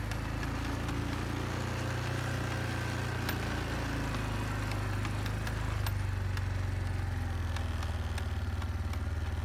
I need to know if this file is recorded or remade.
recorded